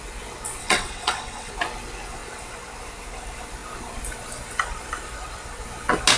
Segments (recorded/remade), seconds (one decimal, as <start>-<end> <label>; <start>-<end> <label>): 0.0-0.6 recorded; 0.6-1.5 remade; 1.5-6.2 recorded